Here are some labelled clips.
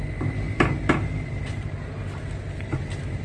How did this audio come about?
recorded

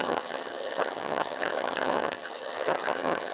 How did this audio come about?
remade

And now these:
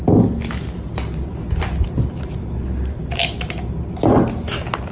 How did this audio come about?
recorded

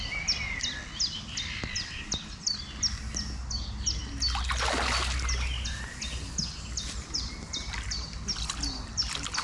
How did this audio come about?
recorded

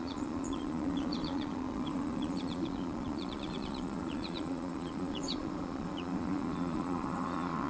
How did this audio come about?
remade